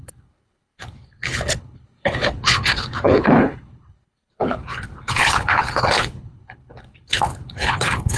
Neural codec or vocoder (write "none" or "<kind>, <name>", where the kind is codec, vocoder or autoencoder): codec, HILCodec